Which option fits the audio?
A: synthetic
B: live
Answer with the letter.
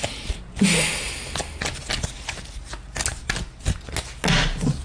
B